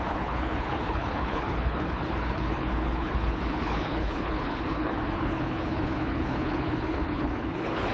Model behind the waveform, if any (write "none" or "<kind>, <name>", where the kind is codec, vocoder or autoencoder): codec, HILCodec